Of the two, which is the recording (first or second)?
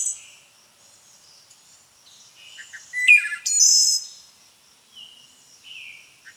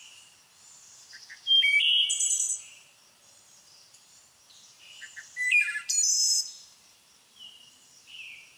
first